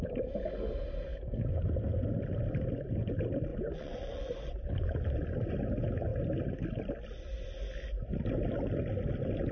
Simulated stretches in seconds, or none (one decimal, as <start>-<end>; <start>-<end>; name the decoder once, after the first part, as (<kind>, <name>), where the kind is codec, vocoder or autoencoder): 3.5-4.7 (vocoder, Vocos)